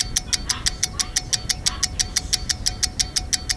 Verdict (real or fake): real